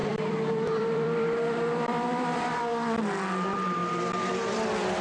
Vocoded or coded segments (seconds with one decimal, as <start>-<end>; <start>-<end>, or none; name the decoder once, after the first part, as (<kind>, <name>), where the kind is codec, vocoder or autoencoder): 0.0-3.0 (vocoder, BigVGAN v2); 3.8-4.3